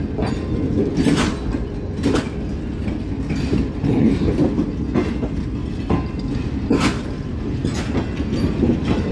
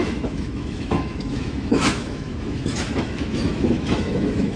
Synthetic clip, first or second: second